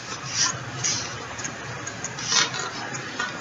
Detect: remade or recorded recorded